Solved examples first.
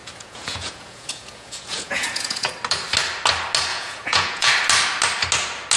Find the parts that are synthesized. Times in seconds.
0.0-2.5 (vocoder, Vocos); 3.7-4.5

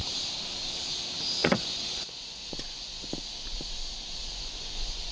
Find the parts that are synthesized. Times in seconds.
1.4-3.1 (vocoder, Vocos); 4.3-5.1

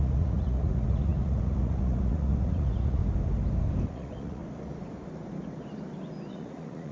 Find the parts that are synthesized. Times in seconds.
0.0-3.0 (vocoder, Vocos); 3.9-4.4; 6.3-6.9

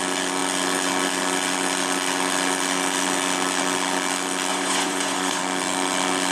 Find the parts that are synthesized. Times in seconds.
4.5-5.4 (vocoder, Vocos)